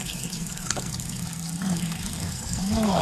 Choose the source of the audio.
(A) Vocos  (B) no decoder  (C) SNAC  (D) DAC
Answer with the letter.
C